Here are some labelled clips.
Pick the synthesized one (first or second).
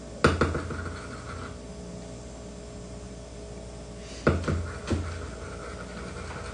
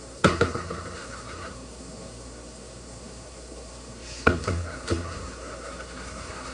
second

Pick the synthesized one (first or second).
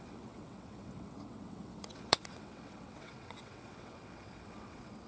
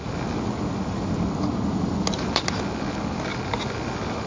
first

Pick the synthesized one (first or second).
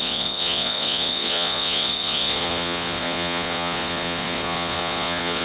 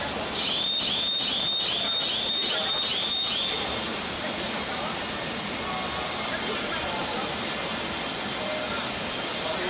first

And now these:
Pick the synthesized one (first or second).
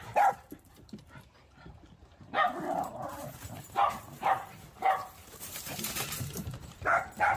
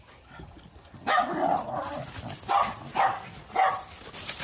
first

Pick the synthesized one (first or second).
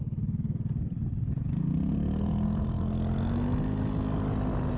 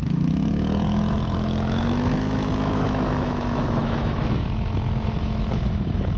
second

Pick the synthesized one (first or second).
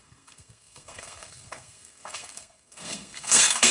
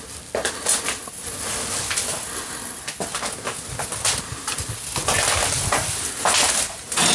first